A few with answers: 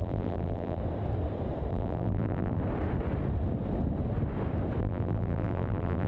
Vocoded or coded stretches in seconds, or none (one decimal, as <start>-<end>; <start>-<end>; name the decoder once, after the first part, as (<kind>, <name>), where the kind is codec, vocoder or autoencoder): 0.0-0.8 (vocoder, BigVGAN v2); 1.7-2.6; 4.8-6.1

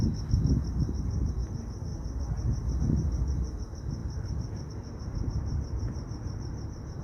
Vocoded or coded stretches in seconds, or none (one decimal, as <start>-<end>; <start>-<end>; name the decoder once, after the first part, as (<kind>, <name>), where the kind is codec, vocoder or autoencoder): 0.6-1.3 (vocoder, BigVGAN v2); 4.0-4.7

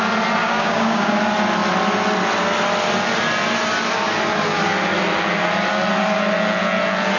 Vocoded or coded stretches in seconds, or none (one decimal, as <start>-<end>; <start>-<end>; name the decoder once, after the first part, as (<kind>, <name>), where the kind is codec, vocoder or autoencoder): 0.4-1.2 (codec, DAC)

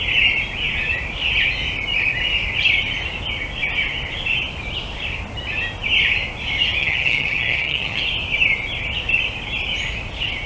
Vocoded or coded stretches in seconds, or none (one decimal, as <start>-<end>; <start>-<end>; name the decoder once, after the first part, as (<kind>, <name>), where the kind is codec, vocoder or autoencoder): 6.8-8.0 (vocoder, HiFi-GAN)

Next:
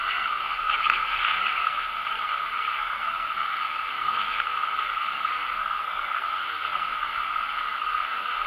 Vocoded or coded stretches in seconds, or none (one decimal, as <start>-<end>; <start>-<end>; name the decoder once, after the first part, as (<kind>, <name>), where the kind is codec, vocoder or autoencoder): 0.0-8.5 (codec, SNAC)